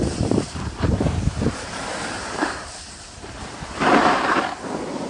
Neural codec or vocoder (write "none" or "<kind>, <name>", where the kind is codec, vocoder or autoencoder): vocoder, BigVGAN v2